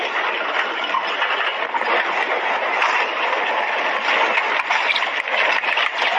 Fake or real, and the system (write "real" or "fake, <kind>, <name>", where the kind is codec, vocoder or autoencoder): real